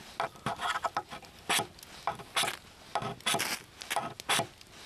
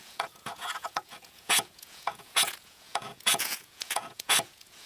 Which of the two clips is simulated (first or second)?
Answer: second